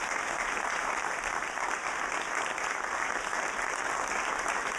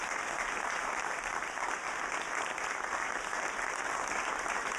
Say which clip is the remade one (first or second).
second